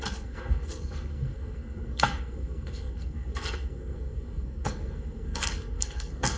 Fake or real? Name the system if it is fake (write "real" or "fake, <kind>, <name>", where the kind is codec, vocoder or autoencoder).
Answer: fake, codec, SNAC